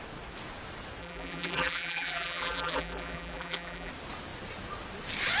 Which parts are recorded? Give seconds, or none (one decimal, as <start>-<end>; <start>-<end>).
0.0-1.0; 3.9-5.4